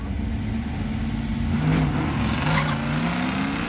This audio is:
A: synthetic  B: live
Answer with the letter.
B